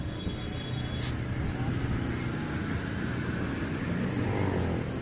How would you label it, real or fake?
real